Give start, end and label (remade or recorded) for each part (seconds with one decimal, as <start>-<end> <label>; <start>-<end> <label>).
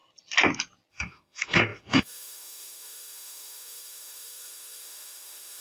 0.0-0.9 recorded; 0.9-5.6 remade